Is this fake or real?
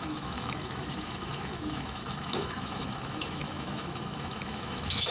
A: fake